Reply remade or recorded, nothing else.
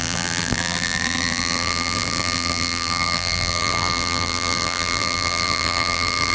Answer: remade